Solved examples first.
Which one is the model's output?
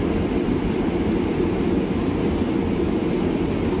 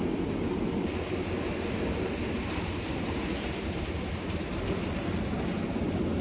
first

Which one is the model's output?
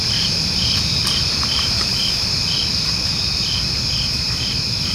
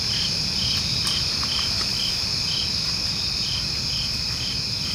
first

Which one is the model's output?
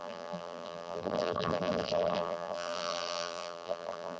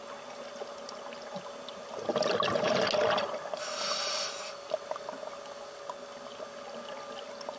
first